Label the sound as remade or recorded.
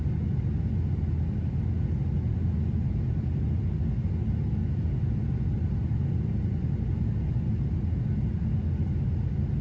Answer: recorded